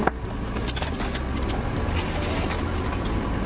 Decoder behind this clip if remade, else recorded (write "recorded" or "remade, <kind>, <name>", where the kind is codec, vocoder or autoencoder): recorded